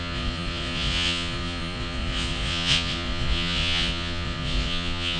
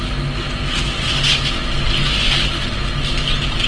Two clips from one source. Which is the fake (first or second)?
first